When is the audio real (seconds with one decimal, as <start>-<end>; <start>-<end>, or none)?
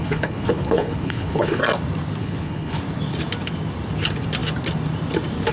1.6-2.2; 2.8-5.5